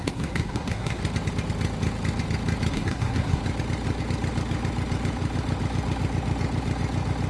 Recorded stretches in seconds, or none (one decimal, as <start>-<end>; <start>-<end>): 1.0-2.7; 3.4-7.3